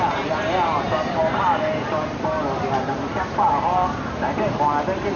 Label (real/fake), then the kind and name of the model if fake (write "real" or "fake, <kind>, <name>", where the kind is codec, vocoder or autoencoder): real